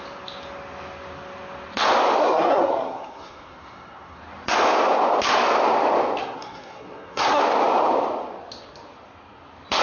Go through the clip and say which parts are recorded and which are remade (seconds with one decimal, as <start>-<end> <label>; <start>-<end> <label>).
0.0-2.2 recorded; 2.2-4.2 remade; 4.2-6.2 recorded; 6.2-7.4 remade; 7.4-9.8 recorded